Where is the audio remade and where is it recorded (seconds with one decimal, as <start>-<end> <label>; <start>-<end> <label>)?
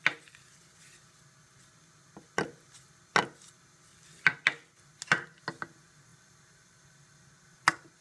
0.0-8.0 recorded